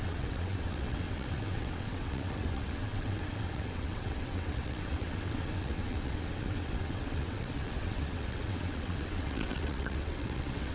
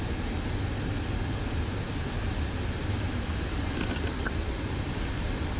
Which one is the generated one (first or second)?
first